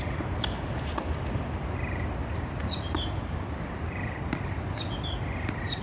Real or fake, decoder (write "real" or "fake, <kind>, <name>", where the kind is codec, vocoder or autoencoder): real